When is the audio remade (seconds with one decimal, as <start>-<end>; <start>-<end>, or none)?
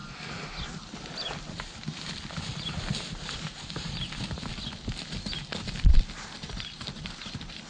none